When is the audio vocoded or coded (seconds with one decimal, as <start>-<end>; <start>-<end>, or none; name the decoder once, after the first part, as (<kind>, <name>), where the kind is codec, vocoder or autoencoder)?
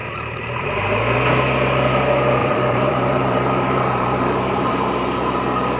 0.0-1.0 (vocoder, BigVGAN v2); 2.4-4.7